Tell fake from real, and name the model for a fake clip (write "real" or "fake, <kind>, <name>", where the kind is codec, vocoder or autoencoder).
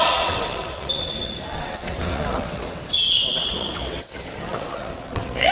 fake, vocoder, WaveNeXt